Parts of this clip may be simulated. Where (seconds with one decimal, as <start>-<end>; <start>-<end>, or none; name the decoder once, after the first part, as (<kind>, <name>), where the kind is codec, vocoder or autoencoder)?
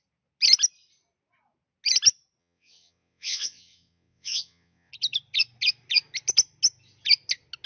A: 2.4-4.9 (vocoder, WaveNeXt)